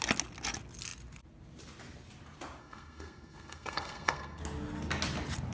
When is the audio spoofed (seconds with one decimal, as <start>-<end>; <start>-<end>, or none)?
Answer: 2.6-4.4